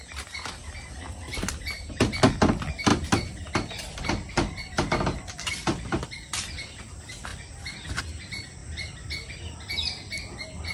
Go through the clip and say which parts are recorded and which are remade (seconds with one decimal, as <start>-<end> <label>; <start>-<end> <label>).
0.0-2.9 recorded; 2.9-6.8 remade; 6.8-8.6 recorded; 8.6-9.1 remade; 9.1-10.7 recorded